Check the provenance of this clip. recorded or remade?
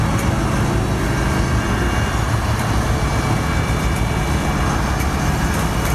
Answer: recorded